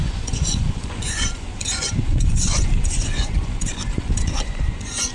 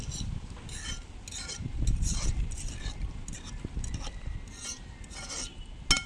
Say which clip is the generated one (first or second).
first